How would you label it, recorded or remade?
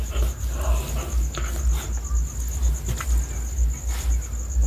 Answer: recorded